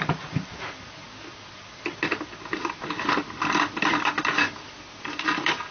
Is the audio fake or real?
real